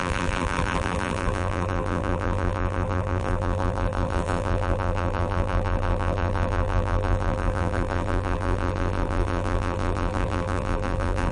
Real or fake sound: fake